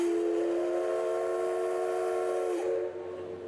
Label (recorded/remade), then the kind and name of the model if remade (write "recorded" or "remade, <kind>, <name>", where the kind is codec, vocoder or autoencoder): recorded